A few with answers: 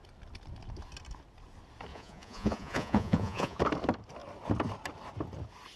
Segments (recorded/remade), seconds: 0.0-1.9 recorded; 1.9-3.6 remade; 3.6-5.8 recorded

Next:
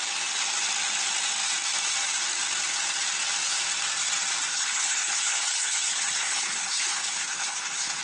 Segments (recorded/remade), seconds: 0.0-4.5 recorded; 4.5-8.0 remade

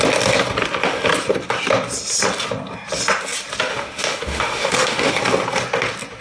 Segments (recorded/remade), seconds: 0.0-3.7 recorded; 3.7-5.1 remade; 5.1-6.2 recorded

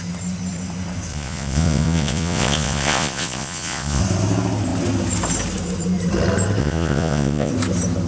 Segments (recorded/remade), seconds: 0.0-1.1 recorded; 1.1-4.0 remade; 4.0-6.6 recorded; 6.6-7.5 remade; 7.5-8.1 recorded

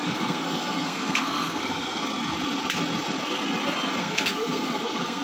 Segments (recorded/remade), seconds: 0.0-2.0 remade; 2.0-4.0 recorded; 4.0-5.2 remade

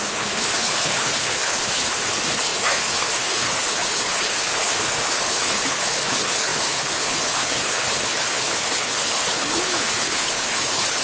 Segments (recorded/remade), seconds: 0.0-11.0 remade

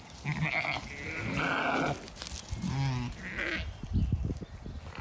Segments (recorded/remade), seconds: 0.0-5.0 recorded

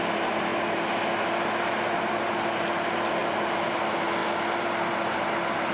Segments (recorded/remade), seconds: 0.0-3.2 recorded; 3.2-3.8 remade; 3.8-5.7 recorded